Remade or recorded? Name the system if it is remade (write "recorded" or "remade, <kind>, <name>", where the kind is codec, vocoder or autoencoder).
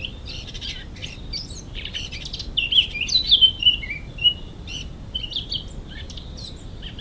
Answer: recorded